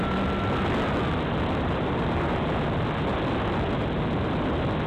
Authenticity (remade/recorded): recorded